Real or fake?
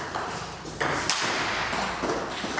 real